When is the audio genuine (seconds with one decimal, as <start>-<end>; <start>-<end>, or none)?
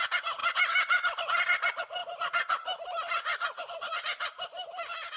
0.0-5.2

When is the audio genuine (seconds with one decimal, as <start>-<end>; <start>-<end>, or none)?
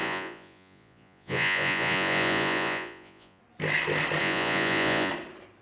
3.4-4.2; 5.1-5.6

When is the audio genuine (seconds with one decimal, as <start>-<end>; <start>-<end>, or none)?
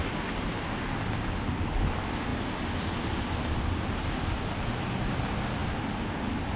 0.0-6.6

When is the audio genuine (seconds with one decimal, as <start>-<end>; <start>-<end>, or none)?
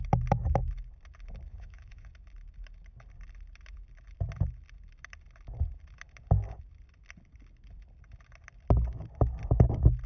0.0-1.5; 2.1-10.1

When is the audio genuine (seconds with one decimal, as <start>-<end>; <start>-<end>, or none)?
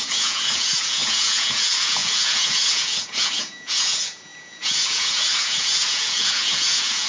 none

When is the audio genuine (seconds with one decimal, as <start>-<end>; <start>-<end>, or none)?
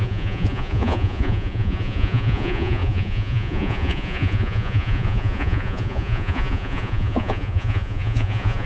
none